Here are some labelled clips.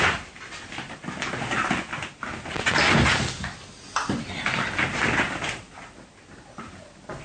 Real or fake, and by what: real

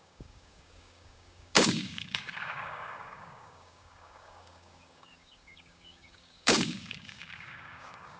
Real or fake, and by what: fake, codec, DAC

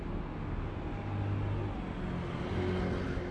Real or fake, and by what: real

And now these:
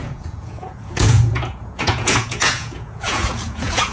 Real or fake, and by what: fake, vocoder, Vocos